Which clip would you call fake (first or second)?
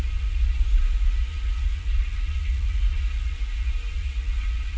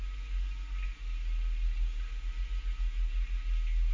first